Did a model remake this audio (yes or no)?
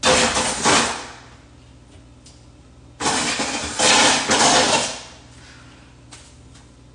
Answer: no